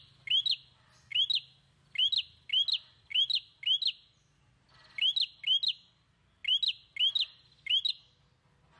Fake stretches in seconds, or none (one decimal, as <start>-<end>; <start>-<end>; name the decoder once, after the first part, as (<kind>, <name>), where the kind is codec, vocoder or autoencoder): none